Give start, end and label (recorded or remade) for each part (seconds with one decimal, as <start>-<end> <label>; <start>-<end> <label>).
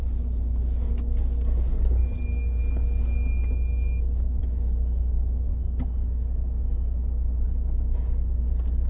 0.0-8.9 recorded